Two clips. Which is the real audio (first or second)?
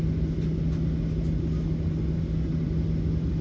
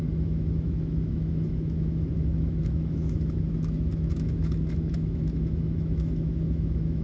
first